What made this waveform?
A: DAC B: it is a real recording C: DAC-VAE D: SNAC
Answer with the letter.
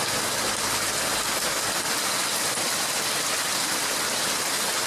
B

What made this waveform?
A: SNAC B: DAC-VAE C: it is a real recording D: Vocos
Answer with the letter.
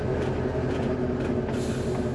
C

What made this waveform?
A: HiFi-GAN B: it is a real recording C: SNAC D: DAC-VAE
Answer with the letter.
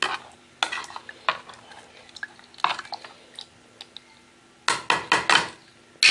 B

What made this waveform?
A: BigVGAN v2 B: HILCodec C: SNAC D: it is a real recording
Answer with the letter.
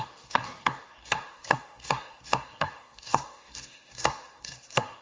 C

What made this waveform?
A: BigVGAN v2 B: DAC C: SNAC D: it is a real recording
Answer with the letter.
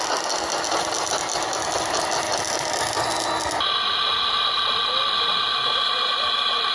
D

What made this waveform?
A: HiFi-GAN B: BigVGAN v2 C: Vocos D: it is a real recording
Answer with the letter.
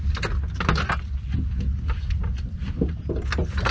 D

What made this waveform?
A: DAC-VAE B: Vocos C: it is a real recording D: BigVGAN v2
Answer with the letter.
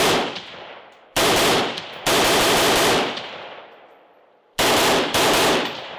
D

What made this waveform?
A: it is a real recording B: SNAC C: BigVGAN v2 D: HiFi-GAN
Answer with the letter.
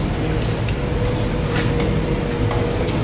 A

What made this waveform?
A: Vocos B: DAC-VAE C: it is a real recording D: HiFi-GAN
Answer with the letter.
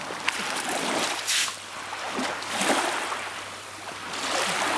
C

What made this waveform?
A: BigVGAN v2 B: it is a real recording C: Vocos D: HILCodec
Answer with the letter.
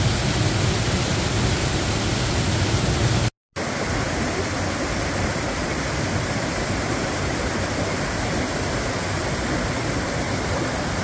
B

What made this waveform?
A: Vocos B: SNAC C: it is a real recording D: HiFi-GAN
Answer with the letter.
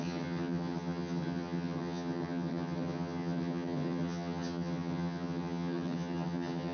D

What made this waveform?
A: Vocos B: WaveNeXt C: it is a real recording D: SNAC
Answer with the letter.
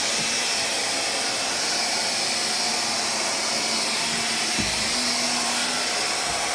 C